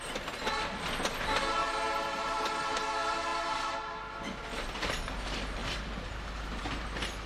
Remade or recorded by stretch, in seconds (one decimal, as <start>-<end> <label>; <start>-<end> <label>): 0.0-1.6 recorded; 1.6-2.3 remade; 2.3-5.6 recorded; 5.6-6.6 remade; 6.6-7.3 recorded

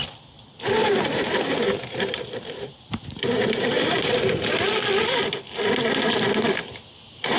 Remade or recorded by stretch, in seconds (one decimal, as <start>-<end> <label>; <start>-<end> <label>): 0.0-0.8 recorded; 0.8-4.1 remade; 4.1-6.6 recorded; 6.6-7.4 remade

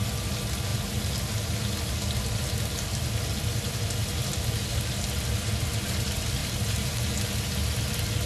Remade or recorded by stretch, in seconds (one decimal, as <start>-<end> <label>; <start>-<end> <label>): 0.0-6.4 recorded; 6.4-7.0 remade; 7.0-8.3 recorded

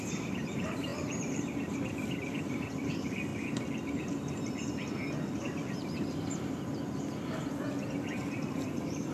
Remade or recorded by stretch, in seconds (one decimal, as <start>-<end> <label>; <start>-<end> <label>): 0.0-3.3 remade; 3.3-5.7 recorded; 5.7-6.7 remade; 6.7-8.5 recorded; 8.5-9.1 remade

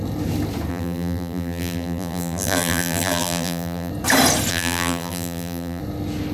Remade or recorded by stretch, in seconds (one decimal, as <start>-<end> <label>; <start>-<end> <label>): 0.0-0.7 recorded; 0.7-3.9 remade; 3.9-4.5 recorded; 4.5-5.8 remade; 5.8-6.3 recorded

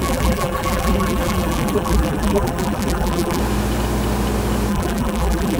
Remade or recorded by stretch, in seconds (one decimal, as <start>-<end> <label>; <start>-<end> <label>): 0.0-3.4 remade; 3.4-4.7 recorded; 4.7-5.6 remade